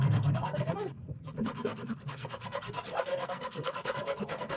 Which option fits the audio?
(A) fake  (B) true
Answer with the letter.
A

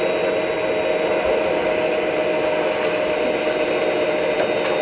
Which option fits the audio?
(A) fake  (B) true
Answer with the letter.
B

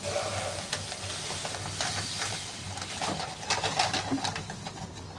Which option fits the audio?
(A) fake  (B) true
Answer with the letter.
B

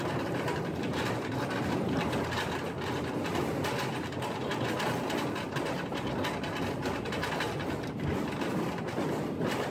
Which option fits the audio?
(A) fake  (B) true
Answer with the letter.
B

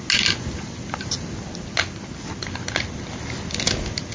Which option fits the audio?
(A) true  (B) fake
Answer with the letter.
A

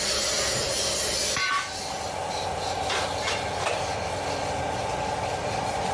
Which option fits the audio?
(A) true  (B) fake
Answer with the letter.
A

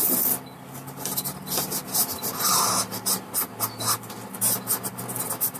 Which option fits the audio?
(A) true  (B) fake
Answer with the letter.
A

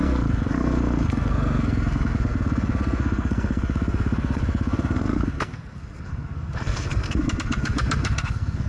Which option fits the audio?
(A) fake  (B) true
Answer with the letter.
A